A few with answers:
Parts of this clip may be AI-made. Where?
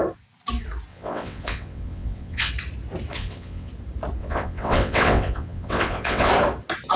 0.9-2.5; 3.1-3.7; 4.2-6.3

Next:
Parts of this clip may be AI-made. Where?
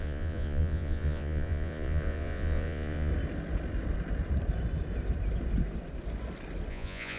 0.0-3.1; 6.7-7.2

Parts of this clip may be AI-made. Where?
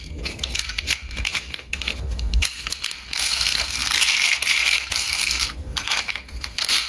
0.0-6.9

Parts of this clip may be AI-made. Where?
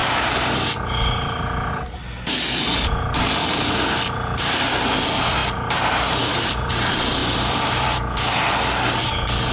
0.0-1.7; 3.4-4.4; 5.4-6.7; 7.2-8.6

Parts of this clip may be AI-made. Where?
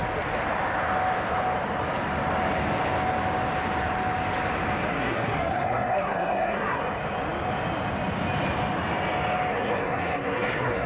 4.9-6.8; 9.5-10.9